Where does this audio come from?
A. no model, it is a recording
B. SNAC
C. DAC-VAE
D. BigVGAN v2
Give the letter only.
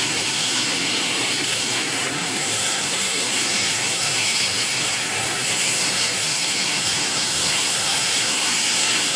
B